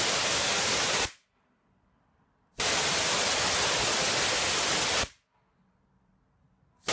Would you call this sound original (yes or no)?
yes